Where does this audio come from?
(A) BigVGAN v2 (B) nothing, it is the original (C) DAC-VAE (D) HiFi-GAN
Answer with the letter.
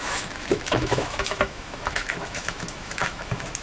C